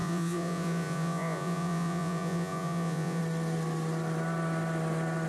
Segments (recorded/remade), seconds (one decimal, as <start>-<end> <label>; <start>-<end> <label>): 0.0-3.2 remade; 3.2-5.3 recorded

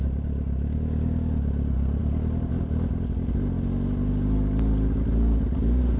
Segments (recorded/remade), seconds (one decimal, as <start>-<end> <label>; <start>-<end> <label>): 0.0-6.0 recorded